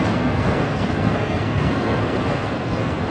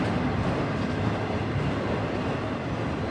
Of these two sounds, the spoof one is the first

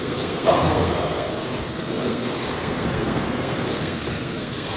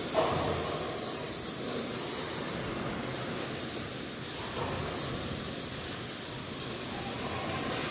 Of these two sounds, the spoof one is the first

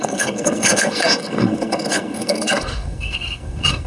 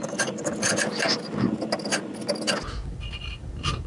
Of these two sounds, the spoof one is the first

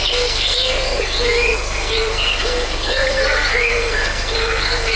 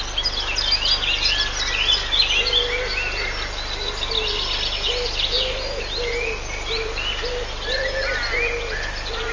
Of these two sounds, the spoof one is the first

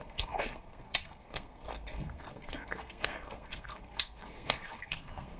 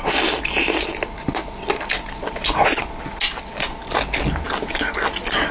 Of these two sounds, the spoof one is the first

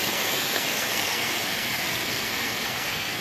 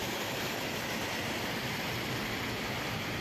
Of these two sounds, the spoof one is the first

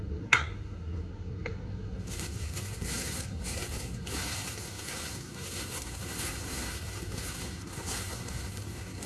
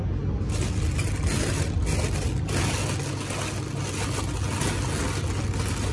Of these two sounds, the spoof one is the first